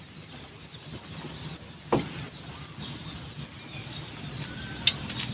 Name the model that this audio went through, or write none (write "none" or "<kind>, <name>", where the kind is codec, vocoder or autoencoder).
none